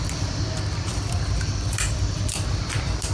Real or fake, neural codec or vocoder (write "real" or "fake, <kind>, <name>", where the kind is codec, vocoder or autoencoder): fake, vocoder, BigVGAN v2